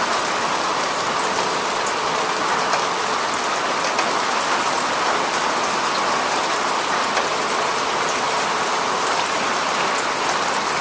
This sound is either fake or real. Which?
real